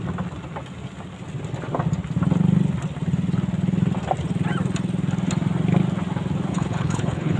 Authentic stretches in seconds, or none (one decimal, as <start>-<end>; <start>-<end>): 0.0-6.5